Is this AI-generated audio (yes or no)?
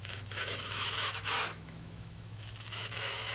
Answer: yes